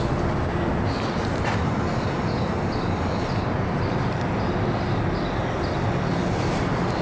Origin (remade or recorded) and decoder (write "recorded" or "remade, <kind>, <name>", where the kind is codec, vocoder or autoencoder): recorded